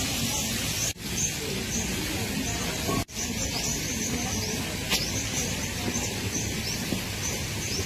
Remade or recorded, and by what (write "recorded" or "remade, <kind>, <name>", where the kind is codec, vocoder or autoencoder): recorded